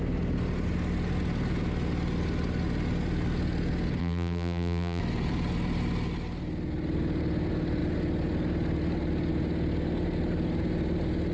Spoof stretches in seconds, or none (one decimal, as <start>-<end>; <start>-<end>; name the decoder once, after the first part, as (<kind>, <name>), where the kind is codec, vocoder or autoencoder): 4.0-5.0 (vocoder, BigVGAN v2)